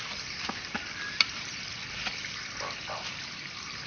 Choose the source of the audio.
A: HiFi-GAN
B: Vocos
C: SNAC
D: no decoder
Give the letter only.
D